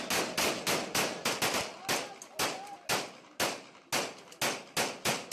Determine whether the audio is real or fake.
real